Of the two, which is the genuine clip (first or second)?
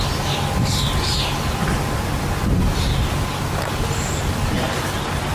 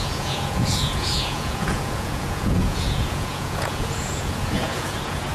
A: first